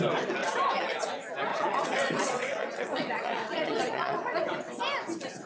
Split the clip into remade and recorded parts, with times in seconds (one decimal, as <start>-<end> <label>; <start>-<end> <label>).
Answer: 0.0-0.4 recorded; 0.4-1.1 remade; 1.1-1.5 recorded; 1.5-4.8 remade; 4.8-5.5 recorded